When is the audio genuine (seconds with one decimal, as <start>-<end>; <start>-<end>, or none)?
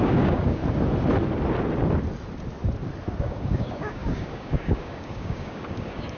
0.6-3.2